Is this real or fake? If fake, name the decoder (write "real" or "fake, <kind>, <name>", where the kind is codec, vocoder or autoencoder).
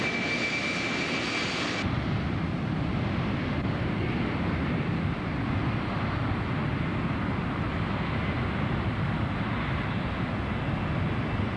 real